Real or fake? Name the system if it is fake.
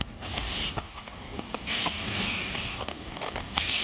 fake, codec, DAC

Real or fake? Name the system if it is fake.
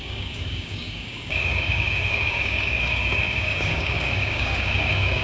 fake, codec, DAC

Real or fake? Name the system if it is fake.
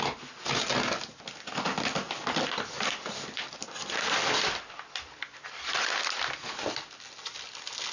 real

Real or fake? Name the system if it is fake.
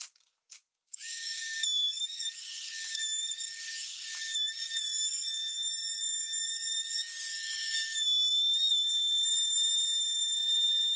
fake, codec, DAC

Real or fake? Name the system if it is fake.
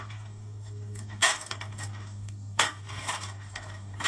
fake, codec, DAC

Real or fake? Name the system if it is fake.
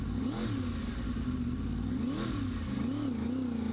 real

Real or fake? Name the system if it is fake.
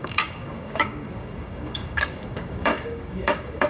fake, codec, DAC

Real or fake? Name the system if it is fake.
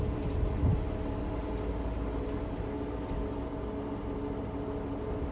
real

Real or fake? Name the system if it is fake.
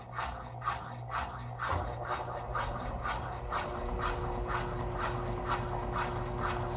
real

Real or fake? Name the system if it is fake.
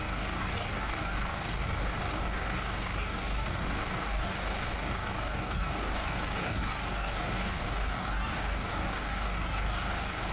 fake, codec, DAC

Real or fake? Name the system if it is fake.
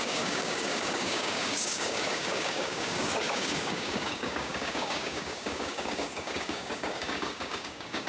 fake, codec, DAC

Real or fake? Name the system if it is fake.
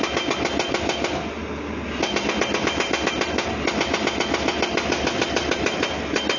real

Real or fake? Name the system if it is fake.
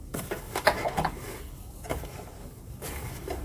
fake, codec, DAC